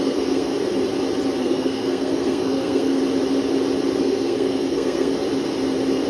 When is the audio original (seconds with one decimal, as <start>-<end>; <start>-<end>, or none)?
0.5-1.4; 3.0-4.0; 5.1-6.1